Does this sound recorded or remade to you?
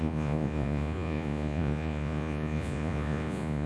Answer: remade